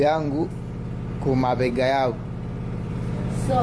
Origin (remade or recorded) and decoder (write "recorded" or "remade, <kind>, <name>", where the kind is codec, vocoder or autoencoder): remade, vocoder, BigVGAN v2